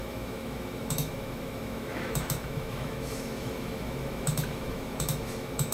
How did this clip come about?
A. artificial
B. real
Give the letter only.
A